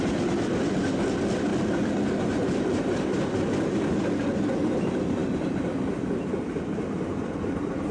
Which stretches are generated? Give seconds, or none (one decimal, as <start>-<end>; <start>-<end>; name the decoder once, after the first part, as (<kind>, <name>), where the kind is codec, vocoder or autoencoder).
none